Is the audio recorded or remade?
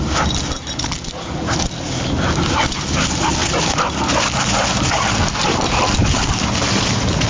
recorded